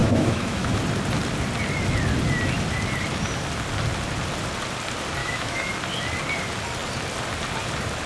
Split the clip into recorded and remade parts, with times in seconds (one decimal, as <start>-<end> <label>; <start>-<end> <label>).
0.0-0.8 remade; 0.8-5.2 recorded; 5.2-5.7 remade; 5.7-8.1 recorded